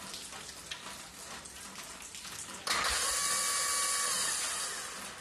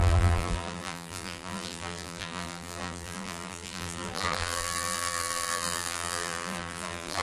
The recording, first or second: first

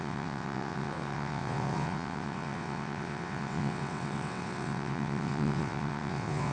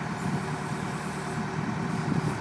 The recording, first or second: second